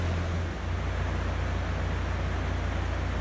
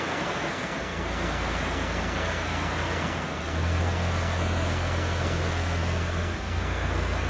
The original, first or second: first